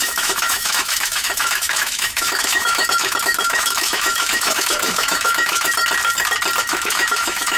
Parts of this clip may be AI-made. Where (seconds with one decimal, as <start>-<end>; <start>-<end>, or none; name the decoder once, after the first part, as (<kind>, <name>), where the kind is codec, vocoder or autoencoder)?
0.0-5.7 (autoencoder, DAC-VAE); 6.6-7.6